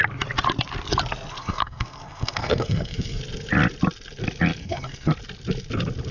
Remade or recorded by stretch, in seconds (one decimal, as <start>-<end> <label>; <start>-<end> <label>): 0.0-1.4 recorded; 1.4-3.2 remade; 3.2-4.6 recorded; 4.6-5.1 remade; 5.1-6.1 recorded